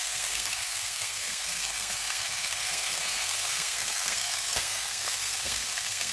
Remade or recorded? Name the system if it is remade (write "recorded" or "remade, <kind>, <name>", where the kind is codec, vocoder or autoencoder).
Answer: remade, codec, SNAC